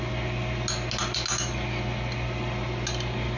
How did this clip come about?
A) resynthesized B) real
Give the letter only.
B